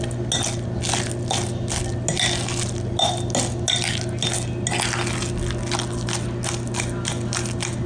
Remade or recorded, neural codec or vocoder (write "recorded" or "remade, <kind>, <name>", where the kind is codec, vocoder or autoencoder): recorded